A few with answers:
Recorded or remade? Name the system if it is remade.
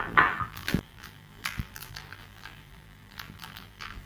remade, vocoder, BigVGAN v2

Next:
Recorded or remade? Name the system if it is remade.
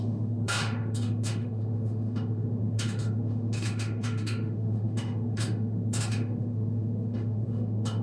remade, autoencoder, DAC-VAE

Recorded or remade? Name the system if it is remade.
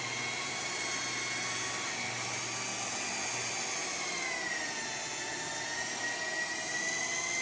recorded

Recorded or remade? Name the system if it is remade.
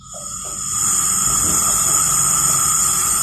recorded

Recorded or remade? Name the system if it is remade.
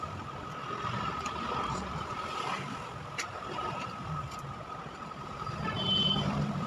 remade, vocoder, BigVGAN v2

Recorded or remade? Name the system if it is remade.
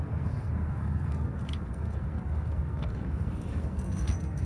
remade, codec, SNAC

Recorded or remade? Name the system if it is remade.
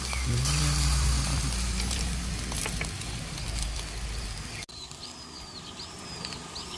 recorded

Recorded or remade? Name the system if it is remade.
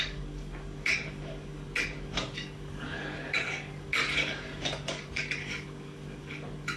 remade, codec, DAC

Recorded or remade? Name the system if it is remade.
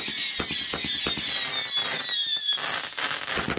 recorded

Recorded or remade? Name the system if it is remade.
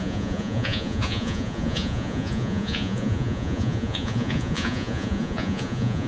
remade, vocoder, Vocos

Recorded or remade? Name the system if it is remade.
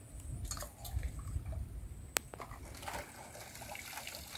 recorded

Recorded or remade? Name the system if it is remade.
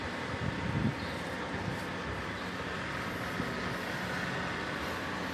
recorded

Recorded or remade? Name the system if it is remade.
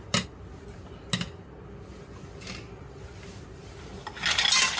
recorded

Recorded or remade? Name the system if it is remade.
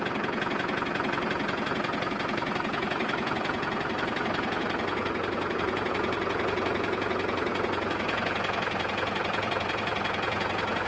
remade, vocoder, Vocos